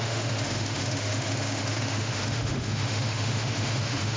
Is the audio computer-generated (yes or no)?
yes